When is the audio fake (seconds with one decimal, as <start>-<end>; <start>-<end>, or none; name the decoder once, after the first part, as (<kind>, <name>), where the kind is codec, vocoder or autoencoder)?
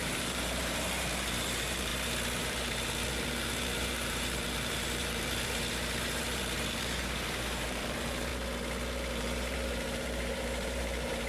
0.0-8.3 (vocoder, BigVGAN v2); 9.1-11.3